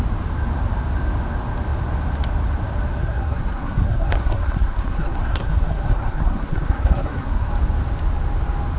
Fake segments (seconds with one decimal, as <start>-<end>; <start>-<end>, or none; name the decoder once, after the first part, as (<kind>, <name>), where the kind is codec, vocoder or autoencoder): 3.0-7.5 (codec, SNAC)